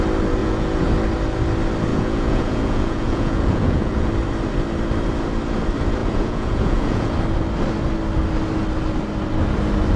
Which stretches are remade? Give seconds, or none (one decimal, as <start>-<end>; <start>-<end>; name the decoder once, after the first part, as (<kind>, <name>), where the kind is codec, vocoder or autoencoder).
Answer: 0.4-0.9 (vocoder, Vocos); 1.9-4.1; 6.0-7.1